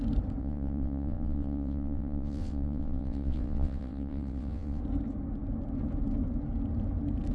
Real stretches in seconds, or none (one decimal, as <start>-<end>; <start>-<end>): 0.0-0.4; 4.8-7.3